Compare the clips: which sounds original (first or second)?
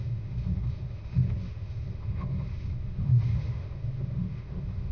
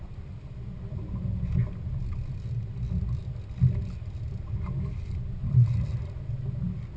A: second